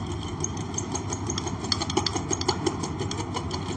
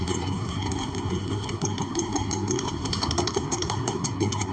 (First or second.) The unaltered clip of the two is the first